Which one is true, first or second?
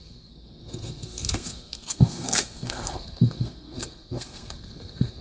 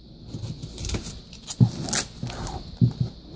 second